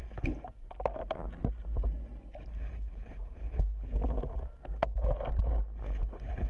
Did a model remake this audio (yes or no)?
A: no